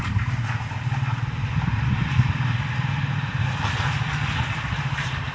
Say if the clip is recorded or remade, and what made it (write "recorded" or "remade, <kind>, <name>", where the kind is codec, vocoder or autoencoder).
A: recorded